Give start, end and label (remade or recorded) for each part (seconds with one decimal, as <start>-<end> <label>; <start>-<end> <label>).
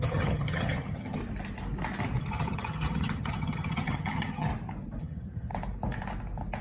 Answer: 0.0-1.2 remade; 1.2-2.2 recorded; 2.2-4.5 remade; 4.5-5.0 recorded; 5.0-5.5 remade; 5.5-6.6 recorded